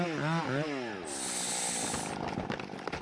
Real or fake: real